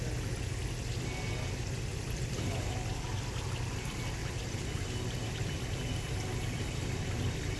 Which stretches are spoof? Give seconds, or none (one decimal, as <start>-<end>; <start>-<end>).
1.9-3.1; 4.2-7.6